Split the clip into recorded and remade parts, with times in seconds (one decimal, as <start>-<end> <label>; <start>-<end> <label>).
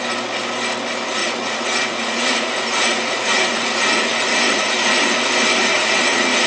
0.0-1.2 recorded; 1.2-4.4 remade; 4.4-5.7 recorded; 5.7-6.5 remade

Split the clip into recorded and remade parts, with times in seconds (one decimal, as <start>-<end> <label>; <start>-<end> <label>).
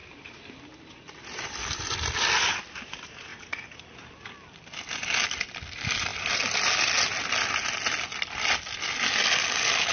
0.0-9.9 recorded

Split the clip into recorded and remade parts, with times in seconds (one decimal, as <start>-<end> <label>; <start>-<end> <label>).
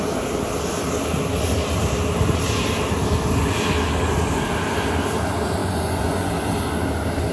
0.0-5.6 recorded; 5.6-6.3 remade; 6.3-7.3 recorded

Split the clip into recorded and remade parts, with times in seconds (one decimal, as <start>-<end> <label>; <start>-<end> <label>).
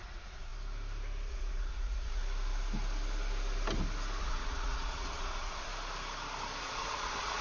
0.0-0.5 remade; 0.5-1.3 recorded; 1.3-2.2 remade; 2.2-4.2 recorded; 4.2-5.7 remade; 5.7-6.6 recorded; 6.6-7.4 remade